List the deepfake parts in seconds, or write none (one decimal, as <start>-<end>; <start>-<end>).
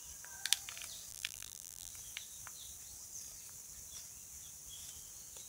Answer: 1.1-1.9